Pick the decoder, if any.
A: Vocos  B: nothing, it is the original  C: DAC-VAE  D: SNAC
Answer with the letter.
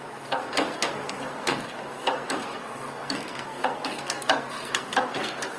D